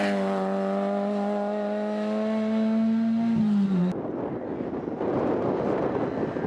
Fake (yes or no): no